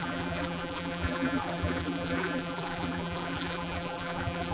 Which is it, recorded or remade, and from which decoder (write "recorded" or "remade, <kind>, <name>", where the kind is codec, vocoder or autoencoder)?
remade, vocoder, BigVGAN v2